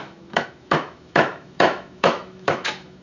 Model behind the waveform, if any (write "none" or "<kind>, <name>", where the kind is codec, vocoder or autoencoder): autoencoder, DAC-VAE